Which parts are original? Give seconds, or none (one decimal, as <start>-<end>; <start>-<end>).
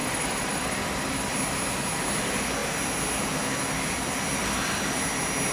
0.7-5.5